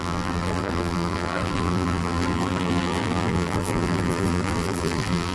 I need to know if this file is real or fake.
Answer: fake